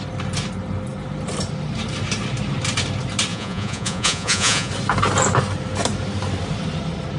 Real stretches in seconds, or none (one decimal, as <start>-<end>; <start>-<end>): 0.0-3.3; 4.7-7.2